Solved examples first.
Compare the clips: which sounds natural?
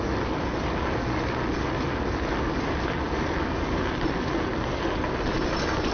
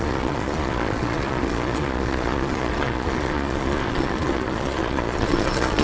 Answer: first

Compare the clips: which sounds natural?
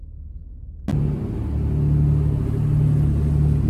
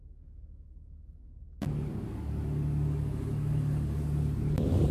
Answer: first